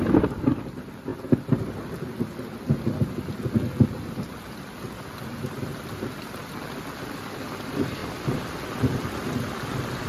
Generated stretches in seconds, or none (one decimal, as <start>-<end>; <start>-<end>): none